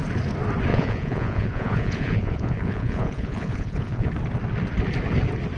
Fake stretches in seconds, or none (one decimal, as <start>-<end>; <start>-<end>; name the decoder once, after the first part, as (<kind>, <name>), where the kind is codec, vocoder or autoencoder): 0.7-4.1 (vocoder, Vocos)